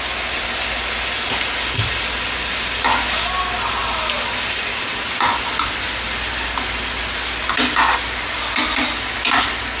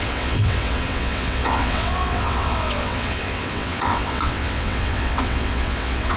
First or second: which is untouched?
first